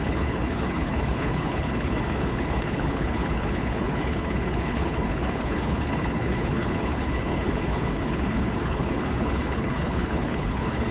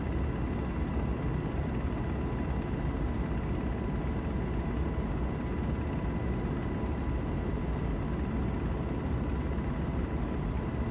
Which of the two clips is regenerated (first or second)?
first